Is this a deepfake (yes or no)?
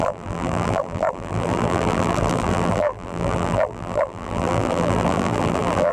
yes